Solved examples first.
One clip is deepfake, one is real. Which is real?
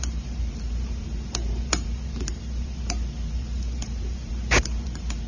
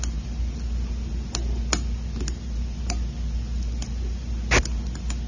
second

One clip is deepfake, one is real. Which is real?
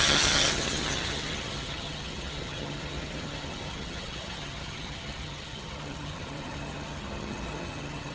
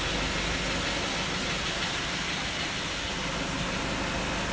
second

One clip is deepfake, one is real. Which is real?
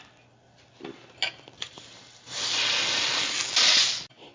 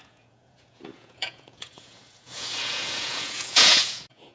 first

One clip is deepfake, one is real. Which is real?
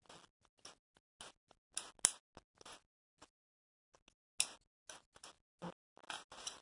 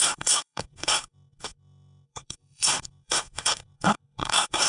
first